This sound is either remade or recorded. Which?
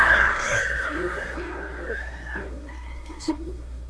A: remade